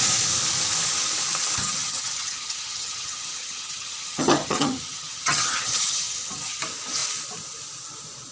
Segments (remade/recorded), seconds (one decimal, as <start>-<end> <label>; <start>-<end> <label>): 0.0-1.6 recorded; 1.6-6.6 remade; 6.6-8.3 recorded